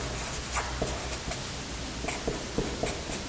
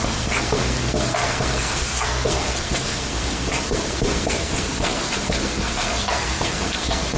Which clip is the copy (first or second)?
second